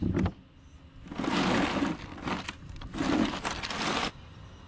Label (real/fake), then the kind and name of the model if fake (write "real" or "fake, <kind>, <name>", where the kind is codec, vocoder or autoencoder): real